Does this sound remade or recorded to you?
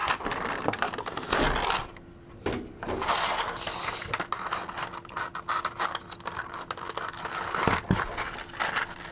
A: recorded